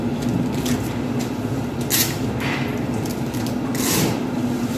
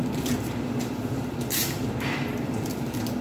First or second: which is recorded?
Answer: first